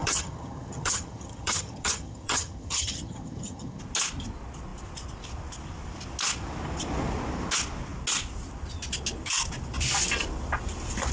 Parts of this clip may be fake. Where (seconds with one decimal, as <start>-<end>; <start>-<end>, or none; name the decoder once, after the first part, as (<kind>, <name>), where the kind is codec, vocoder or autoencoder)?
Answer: 0.0-3.8 (vocoder, HiFi-GAN)